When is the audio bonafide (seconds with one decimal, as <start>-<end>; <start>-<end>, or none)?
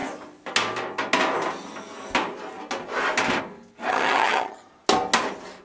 0.0-3.9; 4.7-5.6